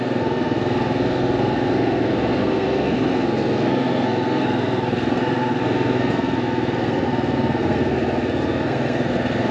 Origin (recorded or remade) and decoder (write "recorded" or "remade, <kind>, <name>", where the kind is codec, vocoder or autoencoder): remade, codec, SNAC